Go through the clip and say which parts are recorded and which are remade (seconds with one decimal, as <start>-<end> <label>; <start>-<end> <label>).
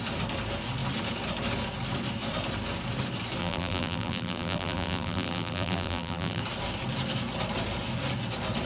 0.0-3.4 recorded; 3.4-6.4 remade; 6.4-8.7 recorded